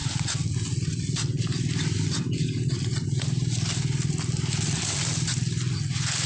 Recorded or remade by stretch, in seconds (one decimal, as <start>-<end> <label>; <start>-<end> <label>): 0.0-6.3 recorded